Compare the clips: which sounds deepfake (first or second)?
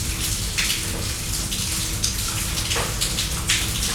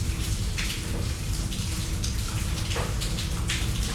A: second